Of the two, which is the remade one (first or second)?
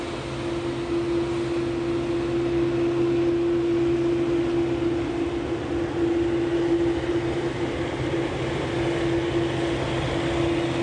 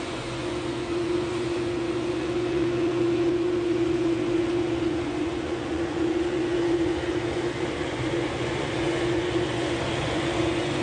second